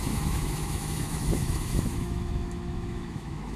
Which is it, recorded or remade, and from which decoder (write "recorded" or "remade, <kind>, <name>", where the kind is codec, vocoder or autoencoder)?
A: remade, autoencoder, DAC-VAE